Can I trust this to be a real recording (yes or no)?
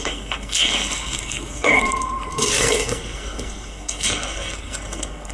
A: no